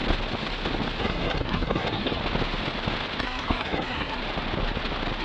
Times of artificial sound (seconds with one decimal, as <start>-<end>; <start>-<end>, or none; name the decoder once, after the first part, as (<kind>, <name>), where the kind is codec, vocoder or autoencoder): 1.0-2.2 (codec, SNAC); 3.2-4.2